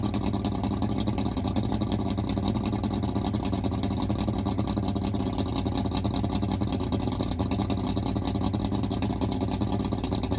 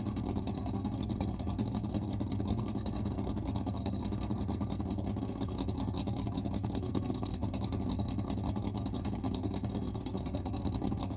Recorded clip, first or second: first